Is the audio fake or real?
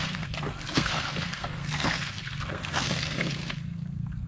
fake